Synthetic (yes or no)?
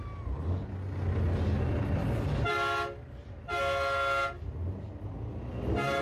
no